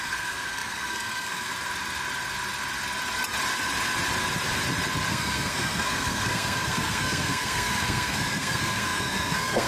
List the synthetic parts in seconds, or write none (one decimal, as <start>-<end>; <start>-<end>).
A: 0.0-1.5; 5.1-9.7